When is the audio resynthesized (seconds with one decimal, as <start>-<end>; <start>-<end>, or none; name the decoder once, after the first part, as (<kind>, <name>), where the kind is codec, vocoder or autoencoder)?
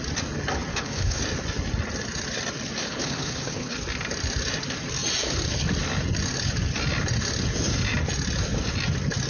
0.7-1.2 (codec, HILCodec); 2.8-3.7